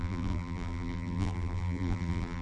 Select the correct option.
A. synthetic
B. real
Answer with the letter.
A